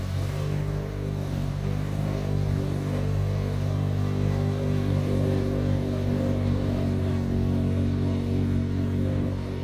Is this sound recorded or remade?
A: remade